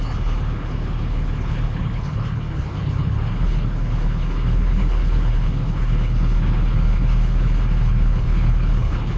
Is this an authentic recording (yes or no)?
no